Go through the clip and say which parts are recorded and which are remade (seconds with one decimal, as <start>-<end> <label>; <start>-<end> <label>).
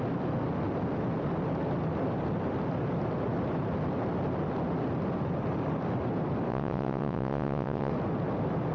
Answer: 0.0-6.5 recorded; 6.5-7.9 remade; 7.9-8.7 recorded